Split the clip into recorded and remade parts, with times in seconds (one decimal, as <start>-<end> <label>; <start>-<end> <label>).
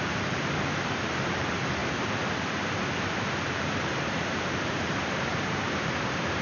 0.0-6.4 remade